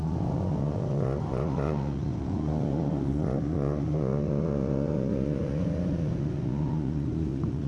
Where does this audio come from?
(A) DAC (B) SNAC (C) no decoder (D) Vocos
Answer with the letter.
D